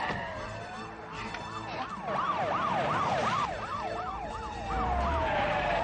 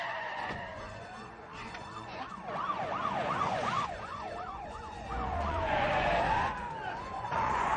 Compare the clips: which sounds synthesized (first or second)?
second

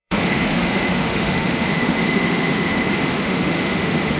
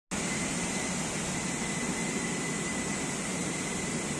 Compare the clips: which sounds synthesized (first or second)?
first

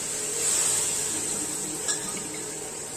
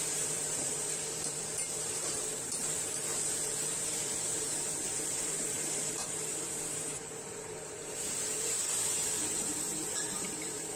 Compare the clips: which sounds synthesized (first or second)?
second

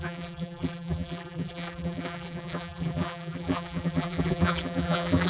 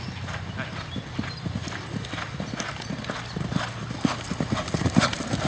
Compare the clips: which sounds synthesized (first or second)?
first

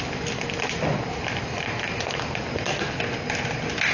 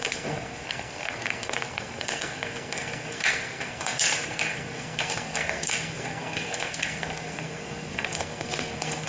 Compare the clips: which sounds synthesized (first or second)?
second